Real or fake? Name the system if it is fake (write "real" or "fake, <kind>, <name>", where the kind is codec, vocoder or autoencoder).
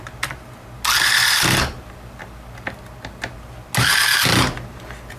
real